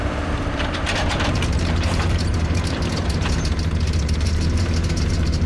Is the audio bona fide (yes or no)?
no